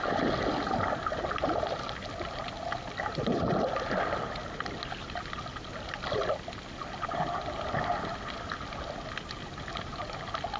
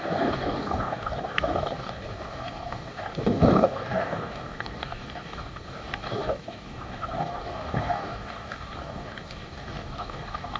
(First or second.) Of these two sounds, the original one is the first